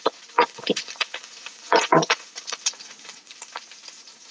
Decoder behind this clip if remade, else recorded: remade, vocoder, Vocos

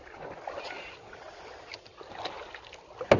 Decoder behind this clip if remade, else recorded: recorded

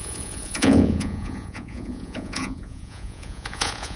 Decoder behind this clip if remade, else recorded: remade, vocoder, Vocos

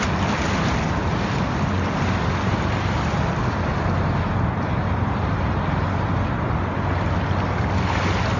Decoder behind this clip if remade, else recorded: recorded